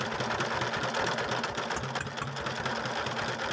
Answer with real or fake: real